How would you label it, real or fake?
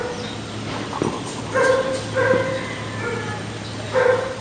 real